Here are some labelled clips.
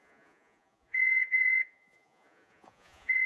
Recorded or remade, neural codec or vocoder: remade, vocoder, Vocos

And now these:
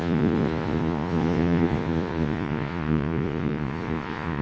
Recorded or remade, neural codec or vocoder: remade, vocoder, Vocos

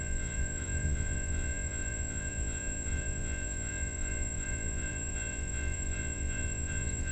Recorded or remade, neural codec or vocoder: remade, vocoder, Vocos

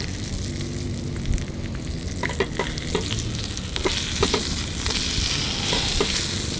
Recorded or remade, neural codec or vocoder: recorded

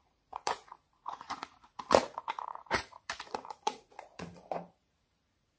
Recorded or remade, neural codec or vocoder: remade, vocoder, Vocos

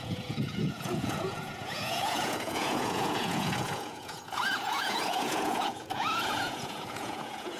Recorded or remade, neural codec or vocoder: remade, vocoder, Vocos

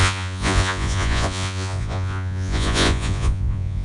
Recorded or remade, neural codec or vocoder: remade, vocoder, Vocos